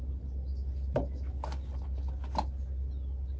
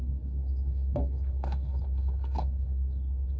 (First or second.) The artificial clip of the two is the second